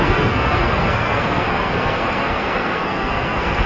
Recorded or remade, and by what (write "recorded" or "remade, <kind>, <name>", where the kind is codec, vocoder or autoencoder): remade, codec, SNAC